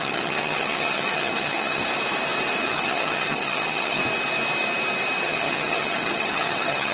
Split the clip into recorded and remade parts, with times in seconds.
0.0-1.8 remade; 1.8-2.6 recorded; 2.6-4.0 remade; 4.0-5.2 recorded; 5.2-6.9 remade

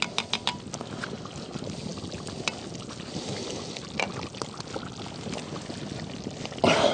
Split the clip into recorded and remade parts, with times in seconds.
0.0-6.9 recorded

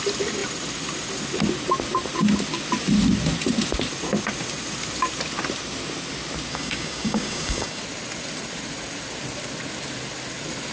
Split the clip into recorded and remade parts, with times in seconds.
0.0-6.5 recorded; 6.5-7.8 remade; 7.8-10.7 recorded

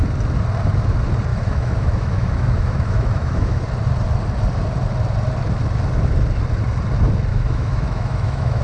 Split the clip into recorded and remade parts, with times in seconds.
0.0-1.3 recorded; 1.3-3.6 remade; 3.6-7.3 recorded; 7.3-8.6 remade

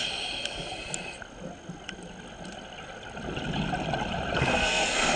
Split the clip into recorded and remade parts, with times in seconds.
0.0-4.5 recorded; 4.5-5.2 remade

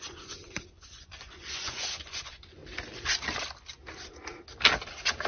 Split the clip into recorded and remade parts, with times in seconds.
0.0-2.6 remade; 2.6-5.3 recorded

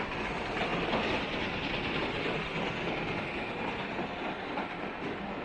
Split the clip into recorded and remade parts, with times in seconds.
0.0-5.4 recorded